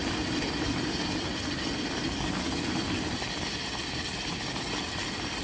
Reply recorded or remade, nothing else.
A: recorded